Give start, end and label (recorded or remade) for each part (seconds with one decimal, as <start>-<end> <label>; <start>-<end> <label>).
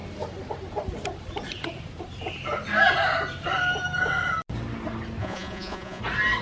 0.0-5.2 recorded; 5.2-6.0 remade; 6.0-6.4 recorded